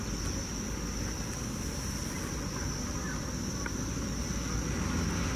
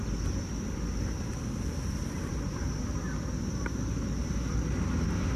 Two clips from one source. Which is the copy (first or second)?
second